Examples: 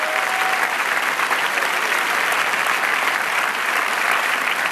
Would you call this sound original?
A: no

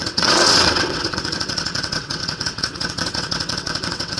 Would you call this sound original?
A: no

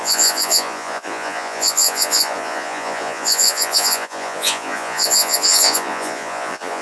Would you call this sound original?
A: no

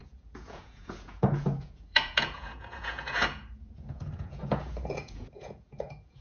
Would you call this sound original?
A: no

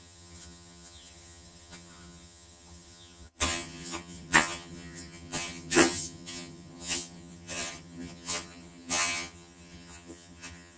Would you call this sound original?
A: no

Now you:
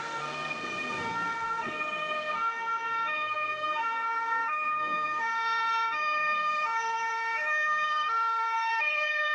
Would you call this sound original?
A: no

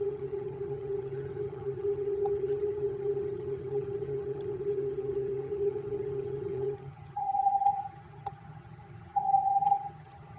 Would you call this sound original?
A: no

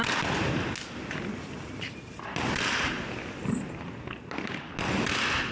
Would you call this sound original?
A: yes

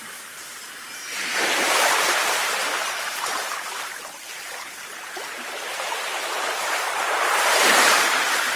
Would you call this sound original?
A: no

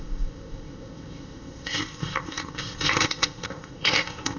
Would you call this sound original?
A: no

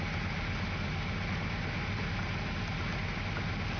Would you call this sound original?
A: yes